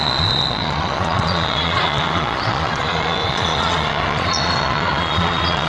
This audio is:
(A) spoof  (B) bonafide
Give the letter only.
A